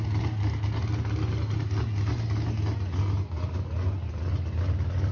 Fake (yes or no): no